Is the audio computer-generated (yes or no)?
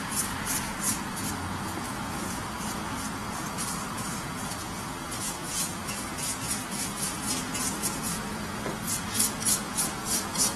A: yes